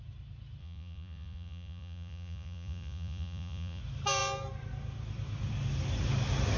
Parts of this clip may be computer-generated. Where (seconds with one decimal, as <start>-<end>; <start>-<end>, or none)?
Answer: 0.6-3.8